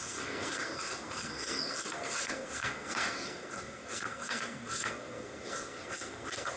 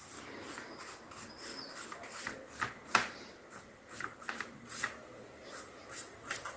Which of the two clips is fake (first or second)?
first